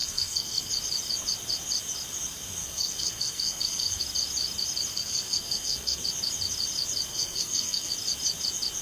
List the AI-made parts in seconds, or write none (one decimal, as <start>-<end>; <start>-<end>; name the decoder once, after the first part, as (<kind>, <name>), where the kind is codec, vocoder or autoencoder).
0.0-0.7 (codec, SNAC); 2.6-4.0; 4.9-6.0; 7.1-7.9